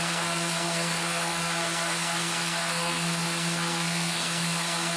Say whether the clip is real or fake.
fake